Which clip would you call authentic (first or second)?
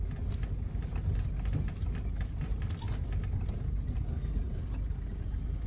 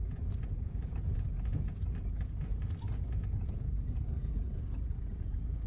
first